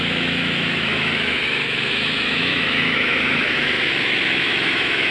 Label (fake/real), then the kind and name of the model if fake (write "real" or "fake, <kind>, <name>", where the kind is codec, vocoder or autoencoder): fake, autoencoder, DAC-VAE